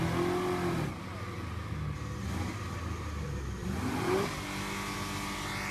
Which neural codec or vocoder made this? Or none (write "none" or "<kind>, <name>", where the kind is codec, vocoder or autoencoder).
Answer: none